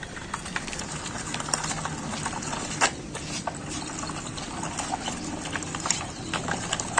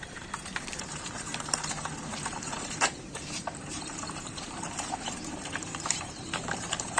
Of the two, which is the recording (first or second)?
first